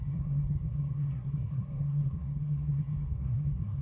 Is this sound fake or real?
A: fake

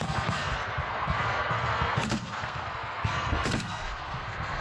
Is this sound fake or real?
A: fake